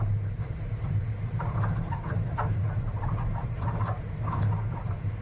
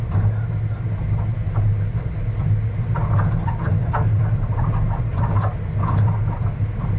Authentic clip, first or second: second